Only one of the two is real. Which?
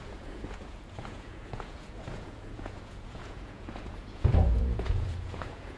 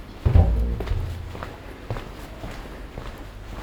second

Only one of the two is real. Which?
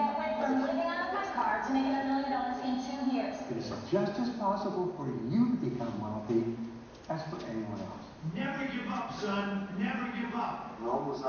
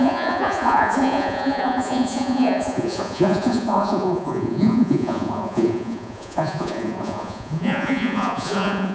first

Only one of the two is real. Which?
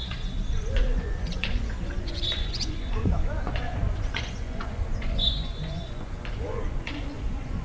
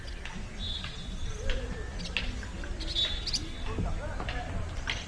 second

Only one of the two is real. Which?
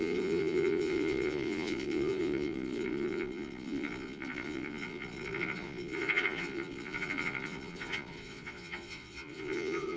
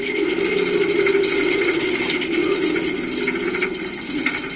second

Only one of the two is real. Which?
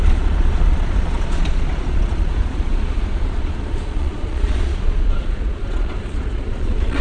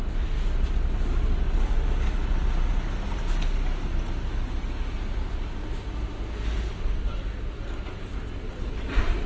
second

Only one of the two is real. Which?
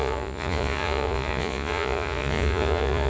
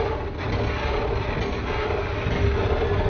second